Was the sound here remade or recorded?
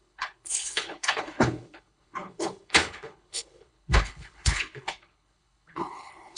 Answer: remade